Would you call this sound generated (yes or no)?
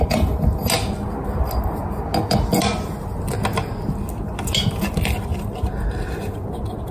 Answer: no